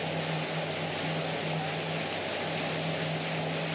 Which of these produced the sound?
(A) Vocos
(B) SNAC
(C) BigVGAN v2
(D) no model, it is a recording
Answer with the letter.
D